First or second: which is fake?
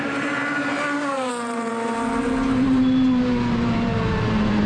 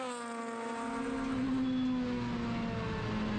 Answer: first